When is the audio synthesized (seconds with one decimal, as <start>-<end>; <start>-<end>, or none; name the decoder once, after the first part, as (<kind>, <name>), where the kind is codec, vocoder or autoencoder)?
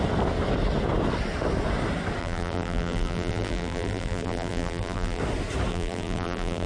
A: 2.2-5.2 (vocoder, BigVGAN v2); 5.7-6.7